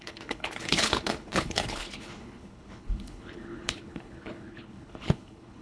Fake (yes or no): yes